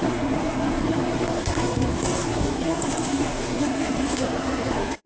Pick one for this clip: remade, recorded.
remade